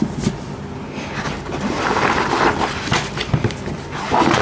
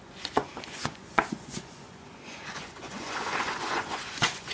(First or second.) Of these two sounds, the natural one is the first